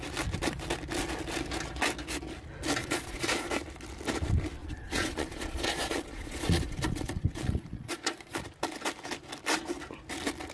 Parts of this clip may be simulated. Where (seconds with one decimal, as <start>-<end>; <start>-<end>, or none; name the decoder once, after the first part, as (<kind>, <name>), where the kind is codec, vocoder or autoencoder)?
2.8-3.5 (vocoder, Vocos); 4.6-8.4

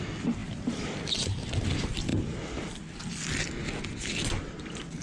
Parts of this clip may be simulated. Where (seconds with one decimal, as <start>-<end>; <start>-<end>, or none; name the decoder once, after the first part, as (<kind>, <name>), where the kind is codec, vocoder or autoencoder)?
none